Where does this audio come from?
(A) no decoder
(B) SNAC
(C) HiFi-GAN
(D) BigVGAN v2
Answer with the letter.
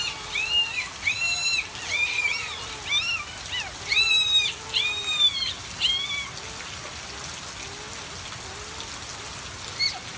A